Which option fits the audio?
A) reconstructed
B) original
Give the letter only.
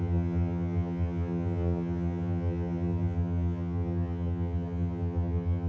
A